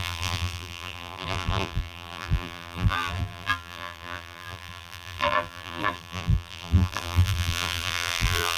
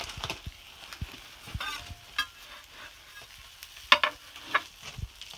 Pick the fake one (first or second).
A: first